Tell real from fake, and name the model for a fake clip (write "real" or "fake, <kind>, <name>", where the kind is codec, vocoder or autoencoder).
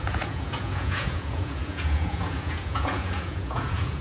fake, vocoder, Vocos